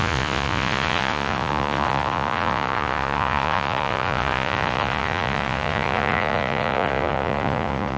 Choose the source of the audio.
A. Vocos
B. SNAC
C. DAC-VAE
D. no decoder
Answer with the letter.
A